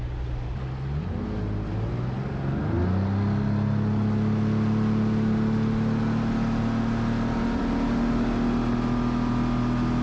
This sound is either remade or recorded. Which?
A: recorded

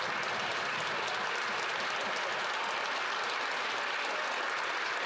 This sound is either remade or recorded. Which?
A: recorded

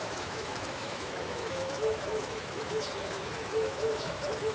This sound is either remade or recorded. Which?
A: remade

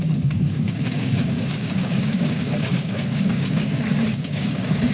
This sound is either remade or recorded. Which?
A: remade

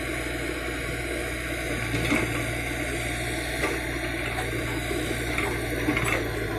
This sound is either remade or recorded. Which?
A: recorded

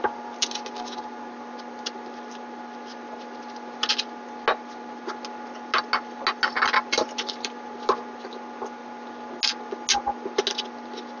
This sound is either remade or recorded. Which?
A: recorded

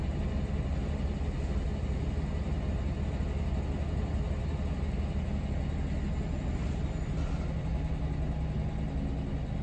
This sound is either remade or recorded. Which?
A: recorded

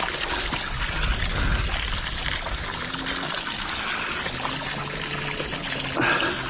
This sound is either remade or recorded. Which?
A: recorded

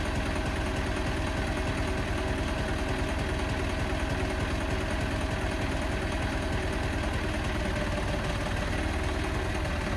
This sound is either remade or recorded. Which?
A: recorded